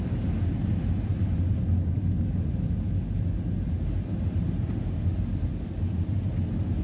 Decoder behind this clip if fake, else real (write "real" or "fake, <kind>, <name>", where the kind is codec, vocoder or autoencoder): real